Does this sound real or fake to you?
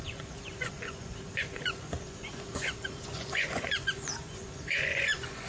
fake